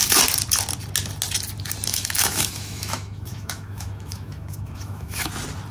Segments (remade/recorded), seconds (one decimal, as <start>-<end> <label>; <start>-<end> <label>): 0.0-1.9 recorded; 1.9-5.3 remade; 5.3-5.7 recorded